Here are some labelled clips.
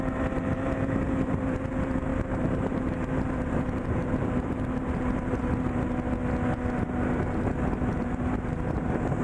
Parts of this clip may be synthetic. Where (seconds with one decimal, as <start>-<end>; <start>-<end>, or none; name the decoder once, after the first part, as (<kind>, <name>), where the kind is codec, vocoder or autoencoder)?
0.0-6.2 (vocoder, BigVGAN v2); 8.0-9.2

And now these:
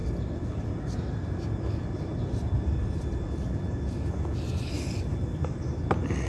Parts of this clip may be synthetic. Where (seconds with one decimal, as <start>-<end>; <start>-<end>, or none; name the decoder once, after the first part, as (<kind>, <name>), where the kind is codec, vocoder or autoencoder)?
0.0-0.7 (vocoder, BigVGAN v2)

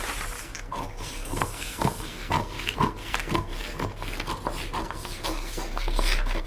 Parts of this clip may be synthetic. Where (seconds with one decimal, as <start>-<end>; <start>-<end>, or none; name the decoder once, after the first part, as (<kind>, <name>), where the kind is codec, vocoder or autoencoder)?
0.4-4.3 (codec, SNAC); 4.8-6.5

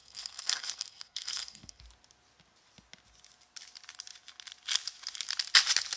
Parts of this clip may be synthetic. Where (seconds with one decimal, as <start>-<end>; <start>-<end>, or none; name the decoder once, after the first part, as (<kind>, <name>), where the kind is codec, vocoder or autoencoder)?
0.0-1.8 (codec, SNAC)

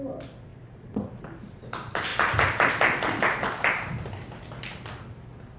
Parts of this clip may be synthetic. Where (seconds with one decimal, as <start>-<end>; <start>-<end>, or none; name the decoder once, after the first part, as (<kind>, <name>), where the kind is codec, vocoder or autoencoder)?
none